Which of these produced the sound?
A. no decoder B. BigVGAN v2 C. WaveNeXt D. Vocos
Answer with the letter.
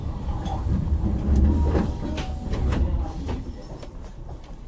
A